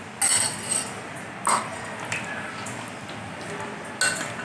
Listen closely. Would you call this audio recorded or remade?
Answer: recorded